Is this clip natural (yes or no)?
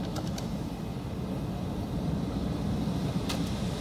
yes